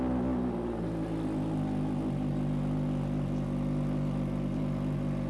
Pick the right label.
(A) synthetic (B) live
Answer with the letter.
B